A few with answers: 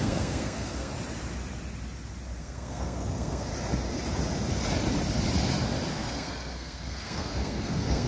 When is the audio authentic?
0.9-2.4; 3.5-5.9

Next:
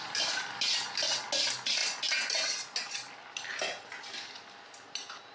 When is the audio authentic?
0.0-5.3

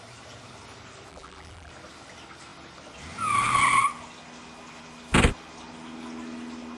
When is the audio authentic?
0.0-1.1; 1.7-6.8

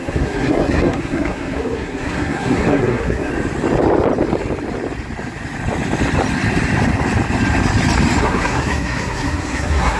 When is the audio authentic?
3.3-8.2

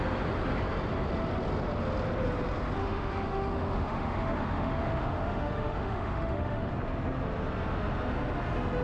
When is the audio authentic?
0.0-2.8; 6.7-8.8